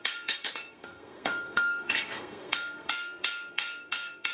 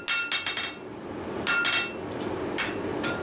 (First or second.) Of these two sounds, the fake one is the first